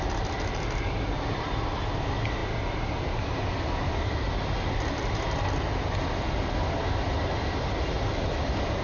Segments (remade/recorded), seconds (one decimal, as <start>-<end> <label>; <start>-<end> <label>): 0.0-8.8 recorded